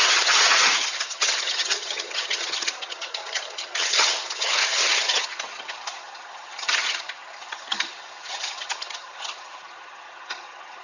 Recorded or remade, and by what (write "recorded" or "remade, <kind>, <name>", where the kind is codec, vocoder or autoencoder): remade, vocoder, HiFi-GAN